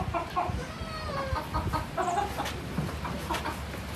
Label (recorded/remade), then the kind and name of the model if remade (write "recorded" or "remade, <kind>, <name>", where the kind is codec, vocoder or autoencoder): recorded